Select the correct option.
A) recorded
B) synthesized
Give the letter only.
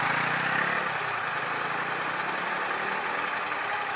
A